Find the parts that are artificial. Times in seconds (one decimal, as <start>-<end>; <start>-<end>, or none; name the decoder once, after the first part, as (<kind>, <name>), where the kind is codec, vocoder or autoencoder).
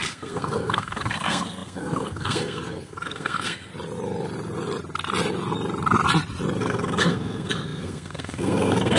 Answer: 0.0-3.7 (codec, SNAC); 6.6-9.0